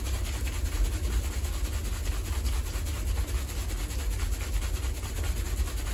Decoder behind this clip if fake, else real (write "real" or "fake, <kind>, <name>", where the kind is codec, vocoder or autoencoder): real